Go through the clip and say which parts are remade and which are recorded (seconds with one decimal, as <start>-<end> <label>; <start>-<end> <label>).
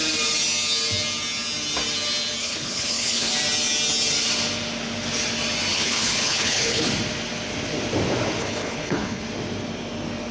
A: 0.0-2.4 recorded; 2.4-3.3 remade; 3.3-5.7 recorded; 5.7-6.9 remade; 6.9-8.4 recorded; 8.4-9.2 remade; 9.2-10.3 recorded